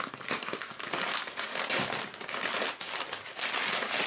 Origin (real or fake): real